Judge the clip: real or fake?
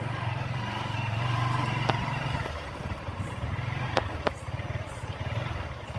fake